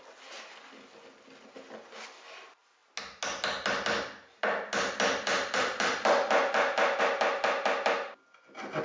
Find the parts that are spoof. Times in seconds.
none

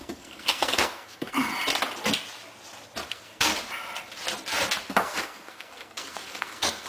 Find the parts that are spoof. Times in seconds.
0.0-1.5 (codec, SNAC); 3.1-3.5; 4.9-6.9

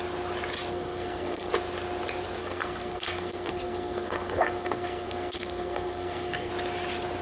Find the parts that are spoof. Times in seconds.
0.7-1.5 (codec, SNAC); 2.4-6.5

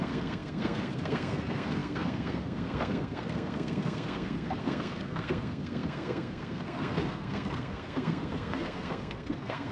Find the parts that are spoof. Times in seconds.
0.0-9.7 (codec, SNAC)

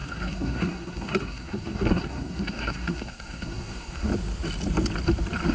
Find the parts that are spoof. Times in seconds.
0.0-4.1 (codec, SNAC)

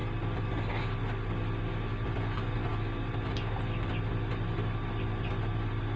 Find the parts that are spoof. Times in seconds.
none

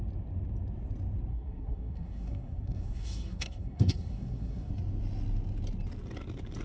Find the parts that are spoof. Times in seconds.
1.3-4.7 (codec, SNAC)